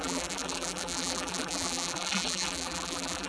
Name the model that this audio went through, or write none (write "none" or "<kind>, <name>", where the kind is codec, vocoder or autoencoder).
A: vocoder, BigVGAN v2